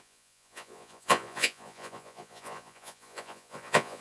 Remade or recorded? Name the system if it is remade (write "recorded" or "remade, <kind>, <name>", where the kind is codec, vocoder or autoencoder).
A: remade, vocoder, Vocos